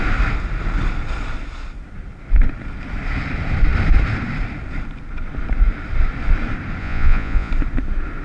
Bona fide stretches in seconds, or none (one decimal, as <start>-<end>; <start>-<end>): 0.0-6.8; 7.5-8.2